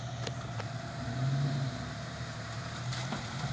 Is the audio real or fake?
fake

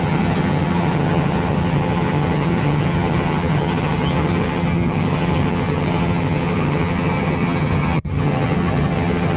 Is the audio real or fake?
fake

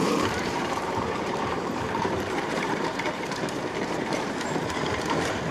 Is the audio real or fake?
fake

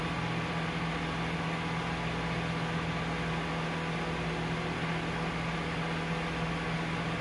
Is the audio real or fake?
real